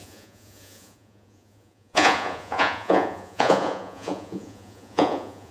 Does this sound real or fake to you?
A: fake